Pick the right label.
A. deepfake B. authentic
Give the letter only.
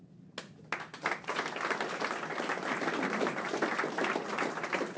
B